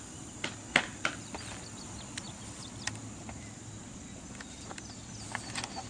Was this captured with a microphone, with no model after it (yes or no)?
yes